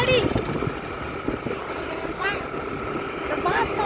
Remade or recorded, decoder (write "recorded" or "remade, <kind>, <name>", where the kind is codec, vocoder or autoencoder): recorded